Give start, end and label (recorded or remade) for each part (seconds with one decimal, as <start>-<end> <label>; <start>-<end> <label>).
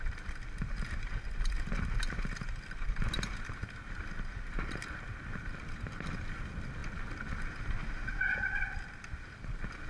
0.0-9.9 recorded